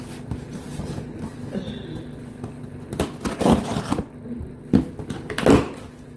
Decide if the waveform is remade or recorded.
recorded